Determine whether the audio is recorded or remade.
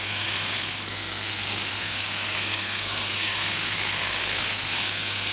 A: remade